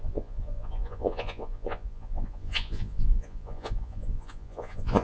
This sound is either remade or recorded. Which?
remade